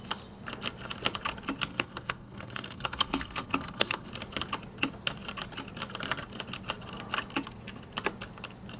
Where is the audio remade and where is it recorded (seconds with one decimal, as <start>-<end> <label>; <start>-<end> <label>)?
0.0-1.7 recorded; 1.7-4.1 remade; 4.1-8.8 recorded